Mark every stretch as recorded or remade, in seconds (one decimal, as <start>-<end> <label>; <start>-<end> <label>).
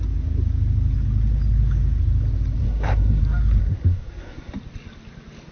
0.0-2.6 recorded; 2.6-3.2 remade; 3.2-3.6 recorded; 3.6-4.5 remade; 4.5-5.5 recorded